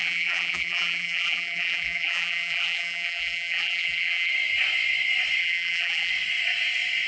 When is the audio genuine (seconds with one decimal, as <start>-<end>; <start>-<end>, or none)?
4.3-5.4; 6.1-7.1